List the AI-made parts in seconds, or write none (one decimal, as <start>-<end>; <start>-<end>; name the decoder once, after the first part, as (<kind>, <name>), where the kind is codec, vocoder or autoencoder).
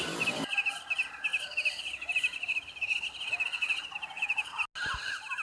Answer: 1.3-4.5 (vocoder, BigVGAN v2)